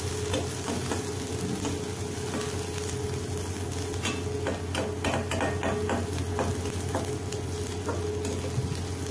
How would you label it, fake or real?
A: real